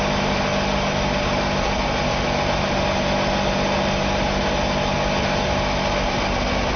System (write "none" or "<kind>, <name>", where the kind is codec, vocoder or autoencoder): none